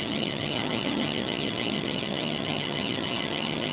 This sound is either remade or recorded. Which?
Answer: remade